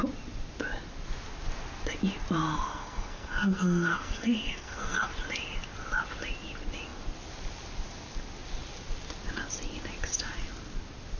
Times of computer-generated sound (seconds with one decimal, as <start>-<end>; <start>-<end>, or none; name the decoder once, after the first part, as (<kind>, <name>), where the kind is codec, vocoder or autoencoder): 2.7-5.1 (codec, SNAC)

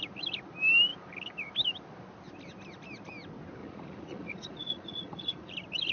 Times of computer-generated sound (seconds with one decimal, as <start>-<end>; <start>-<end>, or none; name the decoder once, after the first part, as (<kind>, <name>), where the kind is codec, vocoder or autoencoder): 3.6-5.5 (vocoder, Vocos)

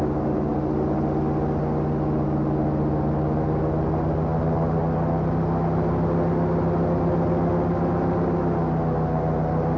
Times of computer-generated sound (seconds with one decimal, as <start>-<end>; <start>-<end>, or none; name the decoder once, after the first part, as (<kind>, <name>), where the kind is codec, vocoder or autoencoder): none

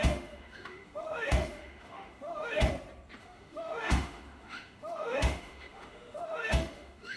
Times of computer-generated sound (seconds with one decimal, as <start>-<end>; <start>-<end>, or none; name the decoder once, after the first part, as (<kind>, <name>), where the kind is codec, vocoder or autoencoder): 0.0-2.7 (autoencoder, DAC-VAE); 3.2-7.2

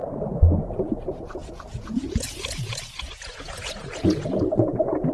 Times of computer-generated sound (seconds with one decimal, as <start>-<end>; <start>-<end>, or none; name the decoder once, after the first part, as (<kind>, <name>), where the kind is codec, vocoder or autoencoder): 0.6-5.1 (vocoder, Vocos)